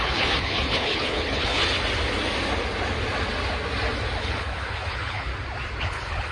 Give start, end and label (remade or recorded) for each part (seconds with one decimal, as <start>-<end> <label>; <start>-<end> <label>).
0.0-1.6 remade; 1.6-4.2 recorded; 4.2-5.3 remade; 5.3-5.8 recorded; 5.8-6.3 remade